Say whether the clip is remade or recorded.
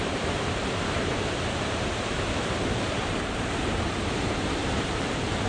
remade